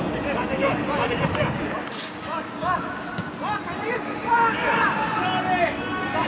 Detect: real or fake real